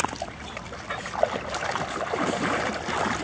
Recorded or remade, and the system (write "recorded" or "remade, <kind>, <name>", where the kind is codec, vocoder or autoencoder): recorded